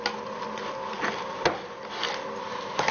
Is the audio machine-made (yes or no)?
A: no